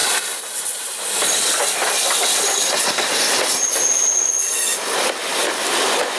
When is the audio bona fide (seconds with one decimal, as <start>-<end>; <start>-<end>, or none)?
0.0-6.2